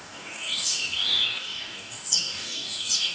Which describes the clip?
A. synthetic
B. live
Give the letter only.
A